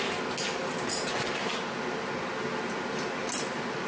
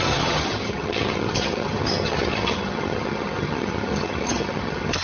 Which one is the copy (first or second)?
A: second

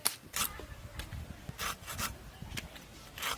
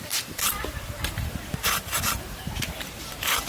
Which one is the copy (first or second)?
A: second